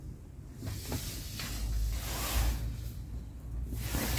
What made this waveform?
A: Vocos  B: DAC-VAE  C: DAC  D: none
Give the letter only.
D